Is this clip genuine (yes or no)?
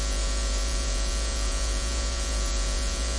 no